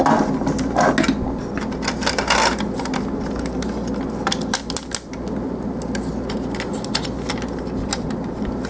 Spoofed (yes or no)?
no